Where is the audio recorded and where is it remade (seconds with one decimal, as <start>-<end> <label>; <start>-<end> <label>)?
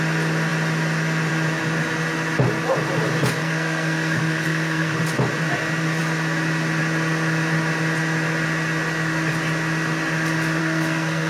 0.0-3.4 recorded; 3.4-5.0 remade; 5.0-10.6 recorded; 10.6-11.3 remade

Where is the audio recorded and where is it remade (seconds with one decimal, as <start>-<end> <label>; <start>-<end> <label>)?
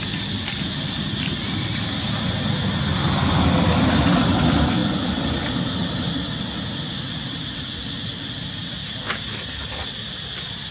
0.0-10.7 recorded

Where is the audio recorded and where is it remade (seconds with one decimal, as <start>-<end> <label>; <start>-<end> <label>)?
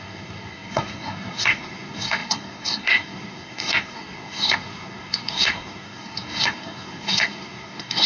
0.0-8.1 remade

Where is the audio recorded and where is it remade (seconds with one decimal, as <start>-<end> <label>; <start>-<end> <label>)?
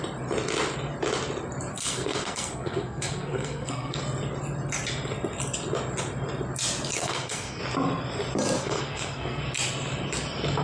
0.0-1.7 recorded; 1.7-4.0 remade; 4.0-7.0 recorded; 7.0-7.6 remade; 7.6-8.6 recorded; 8.6-9.4 remade; 9.4-10.6 recorded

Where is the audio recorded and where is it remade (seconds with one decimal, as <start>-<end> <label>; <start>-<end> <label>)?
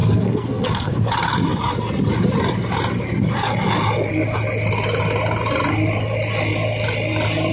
0.0-0.9 remade; 0.9-7.5 recorded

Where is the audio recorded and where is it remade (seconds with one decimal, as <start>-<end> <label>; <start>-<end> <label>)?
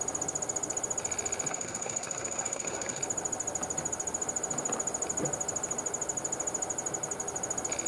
0.0-1.5 recorded; 1.5-3.0 remade; 3.0-7.9 recorded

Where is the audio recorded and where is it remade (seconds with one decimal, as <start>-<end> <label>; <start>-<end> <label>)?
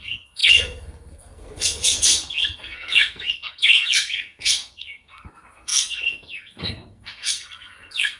0.0-8.2 remade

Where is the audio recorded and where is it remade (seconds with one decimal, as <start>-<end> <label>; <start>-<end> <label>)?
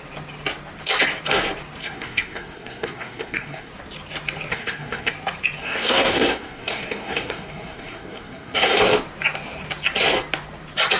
0.0-1.8 recorded; 1.8-3.7 remade; 3.7-4.5 recorded; 4.5-5.1 remade; 5.1-5.6 recorded; 5.6-8.8 remade; 8.8-11.0 recorded